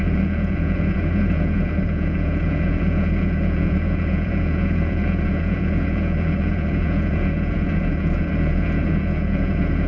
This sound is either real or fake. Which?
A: fake